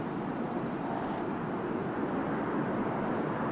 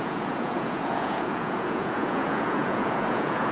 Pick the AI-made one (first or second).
second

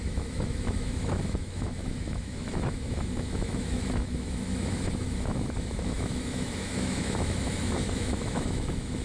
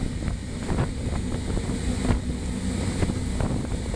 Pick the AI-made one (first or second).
first